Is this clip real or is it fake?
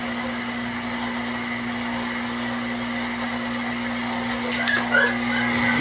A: real